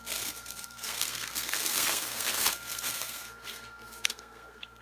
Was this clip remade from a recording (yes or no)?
yes